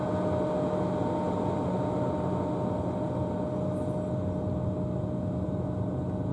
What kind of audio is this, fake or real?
real